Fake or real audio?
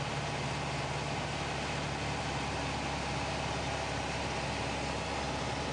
real